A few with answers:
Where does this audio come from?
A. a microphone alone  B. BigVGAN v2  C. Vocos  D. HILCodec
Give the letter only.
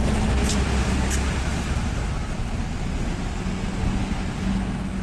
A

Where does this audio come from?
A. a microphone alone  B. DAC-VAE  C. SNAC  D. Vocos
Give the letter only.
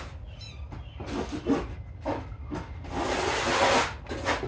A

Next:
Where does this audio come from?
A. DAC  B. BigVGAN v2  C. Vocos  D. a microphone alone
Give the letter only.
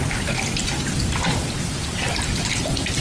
D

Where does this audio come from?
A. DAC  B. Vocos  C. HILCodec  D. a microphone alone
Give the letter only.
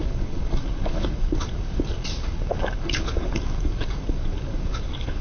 A